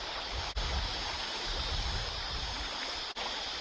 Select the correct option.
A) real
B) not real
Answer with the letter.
A